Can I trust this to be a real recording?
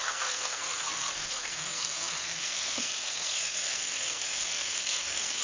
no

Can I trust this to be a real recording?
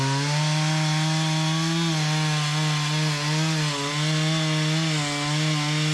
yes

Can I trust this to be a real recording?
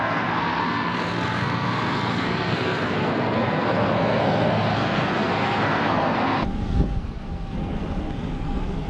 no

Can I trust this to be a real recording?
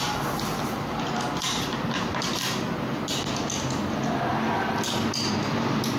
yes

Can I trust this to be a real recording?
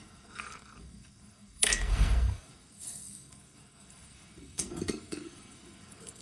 no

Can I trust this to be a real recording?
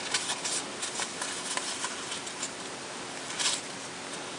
yes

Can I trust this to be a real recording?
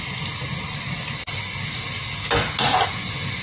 yes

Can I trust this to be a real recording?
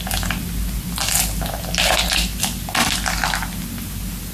yes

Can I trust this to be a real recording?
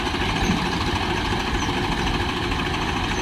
yes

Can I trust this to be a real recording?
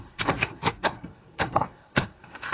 no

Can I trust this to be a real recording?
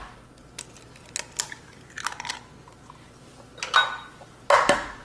yes